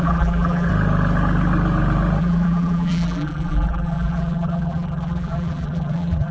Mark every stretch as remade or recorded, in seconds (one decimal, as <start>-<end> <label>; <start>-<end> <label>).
0.0-0.7 remade; 0.7-2.2 recorded; 2.2-6.3 remade